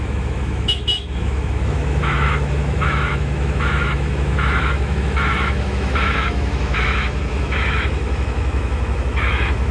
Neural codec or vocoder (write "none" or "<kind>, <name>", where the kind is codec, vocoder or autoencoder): autoencoder, DAC-VAE